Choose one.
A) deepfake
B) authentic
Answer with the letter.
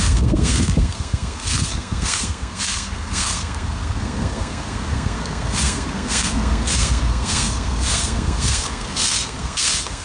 A